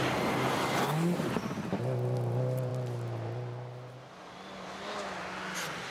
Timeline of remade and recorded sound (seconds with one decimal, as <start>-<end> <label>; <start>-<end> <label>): 0.0-5.9 recorded